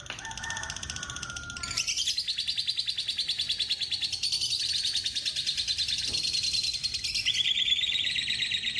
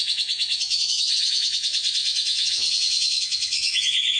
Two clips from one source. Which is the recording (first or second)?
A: first